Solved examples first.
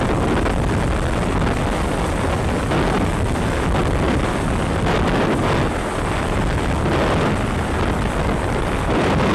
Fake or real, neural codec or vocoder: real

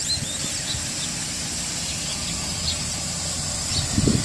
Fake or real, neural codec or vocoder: real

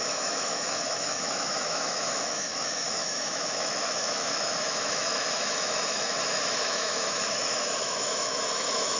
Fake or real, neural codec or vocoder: fake, autoencoder, DAC-VAE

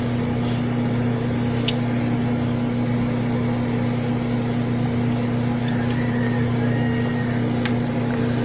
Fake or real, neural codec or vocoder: real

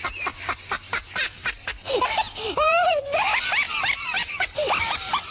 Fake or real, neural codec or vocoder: fake, vocoder, BigVGAN v2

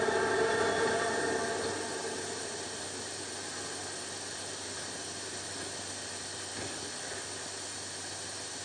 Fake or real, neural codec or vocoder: real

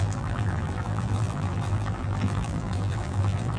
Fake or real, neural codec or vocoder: fake, vocoder, BigVGAN v2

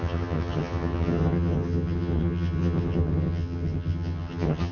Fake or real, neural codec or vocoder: fake, vocoder, HiFi-GAN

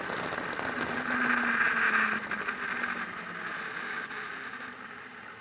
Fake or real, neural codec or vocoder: real